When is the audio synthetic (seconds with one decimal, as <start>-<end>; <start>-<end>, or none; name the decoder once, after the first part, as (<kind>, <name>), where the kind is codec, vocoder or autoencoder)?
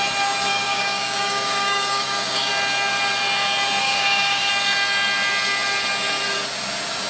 0.5-2.5 (codec, DAC); 3.8-4.5